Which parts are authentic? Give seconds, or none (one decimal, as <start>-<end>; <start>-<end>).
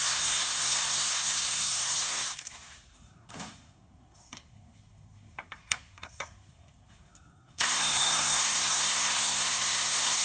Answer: none